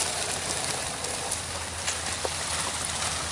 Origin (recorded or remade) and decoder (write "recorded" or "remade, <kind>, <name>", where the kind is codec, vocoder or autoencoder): recorded